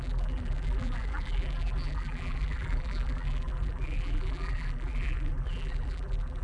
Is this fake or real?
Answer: fake